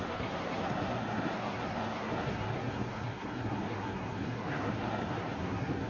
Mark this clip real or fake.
fake